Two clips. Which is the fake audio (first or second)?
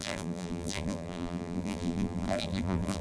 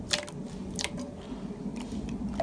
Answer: first